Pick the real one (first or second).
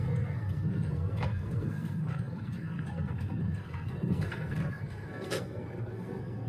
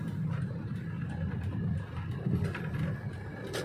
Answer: second